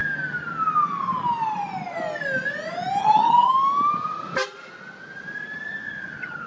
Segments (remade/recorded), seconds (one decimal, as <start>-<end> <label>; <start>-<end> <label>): 0.0-3.0 recorded; 3.0-3.5 remade; 3.5-6.5 recorded